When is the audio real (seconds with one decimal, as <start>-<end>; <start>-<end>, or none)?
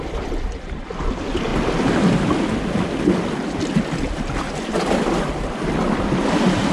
0.0-6.7